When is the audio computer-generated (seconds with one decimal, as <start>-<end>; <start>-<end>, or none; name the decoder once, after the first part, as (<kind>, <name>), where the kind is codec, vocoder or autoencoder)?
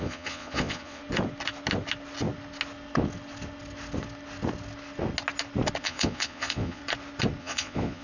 0.0-1.0 (vocoder, Vocos); 5.8-6.8; 7.4-8.0